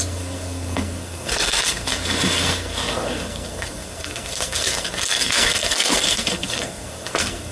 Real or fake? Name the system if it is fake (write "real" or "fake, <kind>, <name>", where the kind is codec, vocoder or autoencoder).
fake, codec, SNAC